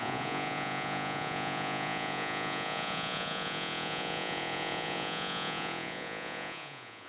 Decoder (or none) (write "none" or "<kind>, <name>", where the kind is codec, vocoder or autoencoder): vocoder, Vocos